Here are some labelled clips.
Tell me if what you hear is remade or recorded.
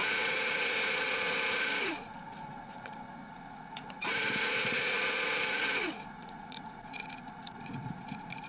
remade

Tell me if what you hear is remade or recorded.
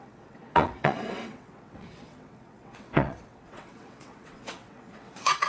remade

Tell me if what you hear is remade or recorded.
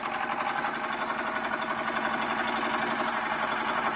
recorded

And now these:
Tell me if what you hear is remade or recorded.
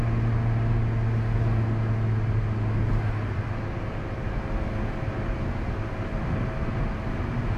recorded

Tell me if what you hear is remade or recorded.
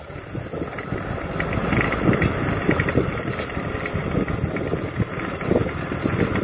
recorded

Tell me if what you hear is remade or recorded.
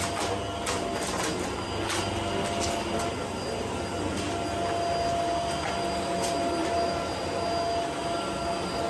recorded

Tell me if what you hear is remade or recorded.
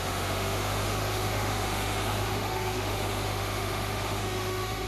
remade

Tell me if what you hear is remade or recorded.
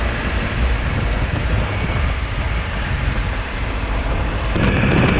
remade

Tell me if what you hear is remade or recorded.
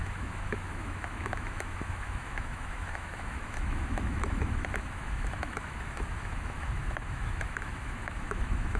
remade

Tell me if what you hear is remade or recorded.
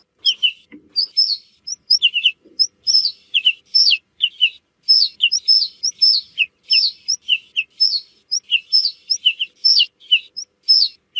recorded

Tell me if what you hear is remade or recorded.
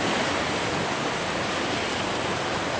recorded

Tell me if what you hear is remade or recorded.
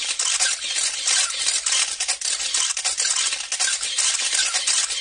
recorded